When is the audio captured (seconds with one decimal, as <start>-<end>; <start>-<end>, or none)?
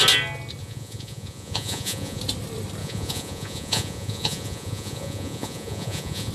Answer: 0.0-0.6; 2.2-2.8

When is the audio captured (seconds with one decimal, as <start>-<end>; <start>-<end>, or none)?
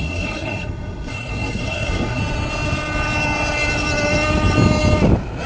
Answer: 2.2-5.5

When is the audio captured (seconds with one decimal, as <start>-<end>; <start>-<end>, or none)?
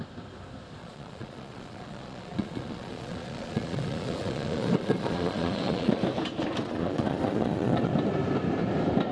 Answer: 0.0-0.8; 6.0-6.6; 7.9-9.1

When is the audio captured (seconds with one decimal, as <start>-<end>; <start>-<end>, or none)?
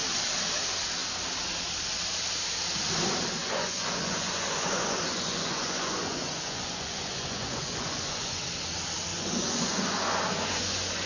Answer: 0.0-3.4; 8.4-9.1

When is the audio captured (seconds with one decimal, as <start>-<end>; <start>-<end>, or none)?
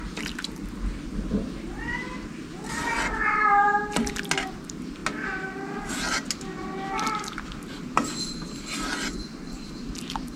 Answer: 0.0-10.4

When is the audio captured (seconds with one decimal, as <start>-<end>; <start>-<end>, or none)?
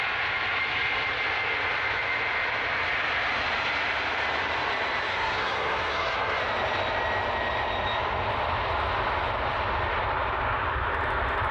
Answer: 0.0-5.1; 6.4-11.5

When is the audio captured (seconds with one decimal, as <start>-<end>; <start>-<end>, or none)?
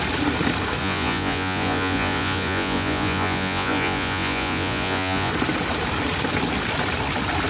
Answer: 0.0-0.8; 5.3-7.5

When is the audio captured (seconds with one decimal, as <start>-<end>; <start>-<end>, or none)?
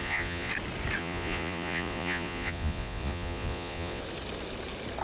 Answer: 0.5-1.0; 4.0-5.0